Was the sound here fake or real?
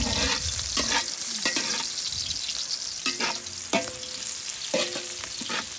real